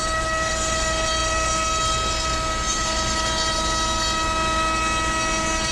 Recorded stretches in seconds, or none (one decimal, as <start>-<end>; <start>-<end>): 0.0-5.7